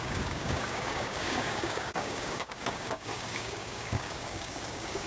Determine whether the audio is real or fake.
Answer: fake